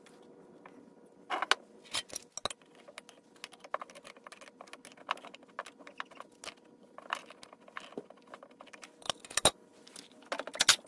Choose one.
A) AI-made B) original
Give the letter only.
B